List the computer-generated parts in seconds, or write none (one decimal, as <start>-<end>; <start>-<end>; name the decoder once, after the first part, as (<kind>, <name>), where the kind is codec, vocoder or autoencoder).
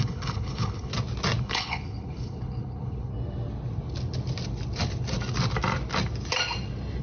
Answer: 0.0-0.9 (codec, HILCodec); 1.4-3.1